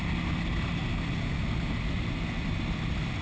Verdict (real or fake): real